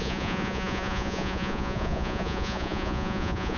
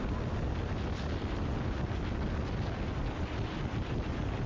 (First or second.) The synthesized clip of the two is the first